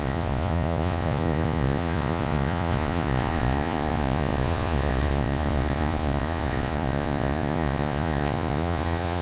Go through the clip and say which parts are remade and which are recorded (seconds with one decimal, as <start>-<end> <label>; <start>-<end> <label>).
0.0-9.2 remade